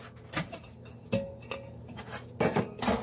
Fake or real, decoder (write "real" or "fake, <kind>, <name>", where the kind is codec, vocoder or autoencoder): real